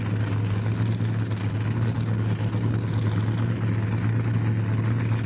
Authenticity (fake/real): real